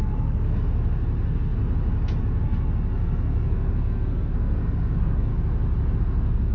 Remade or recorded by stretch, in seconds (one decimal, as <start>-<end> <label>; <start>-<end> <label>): 0.0-1.6 remade; 1.6-2.2 recorded; 2.2-5.3 remade; 5.3-6.0 recorded; 6.0-6.5 remade